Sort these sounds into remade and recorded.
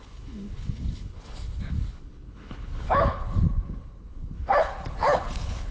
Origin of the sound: remade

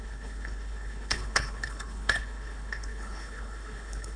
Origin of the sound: remade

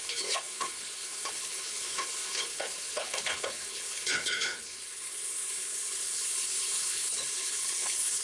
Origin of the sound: remade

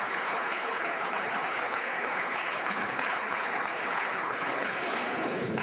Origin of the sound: remade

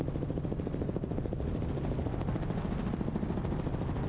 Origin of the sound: recorded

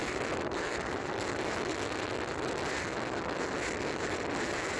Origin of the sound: recorded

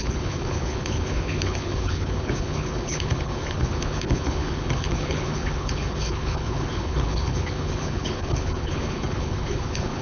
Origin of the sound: remade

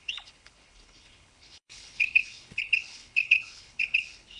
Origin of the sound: remade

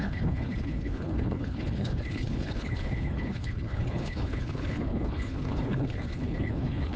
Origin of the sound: remade